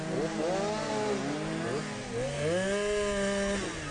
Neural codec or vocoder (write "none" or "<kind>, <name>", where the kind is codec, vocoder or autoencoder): none